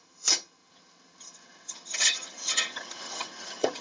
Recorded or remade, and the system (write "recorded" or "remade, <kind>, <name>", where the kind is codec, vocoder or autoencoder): remade, vocoder, HiFi-GAN